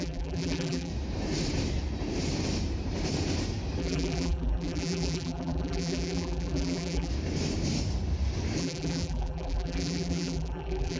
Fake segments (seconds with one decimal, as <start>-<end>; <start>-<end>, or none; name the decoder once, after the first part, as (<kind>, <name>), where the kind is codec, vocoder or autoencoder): 0.0-0.9 (vocoder, BigVGAN v2); 3.8-7.1; 8.6-11.0